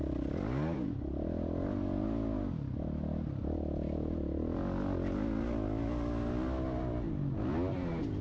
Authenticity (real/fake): real